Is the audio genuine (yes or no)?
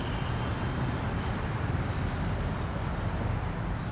yes